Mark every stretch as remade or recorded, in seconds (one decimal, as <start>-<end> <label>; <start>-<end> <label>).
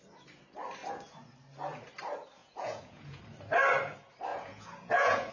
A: 0.0-2.4 recorded; 2.4-3.2 remade; 3.2-4.3 recorded; 4.3-5.3 remade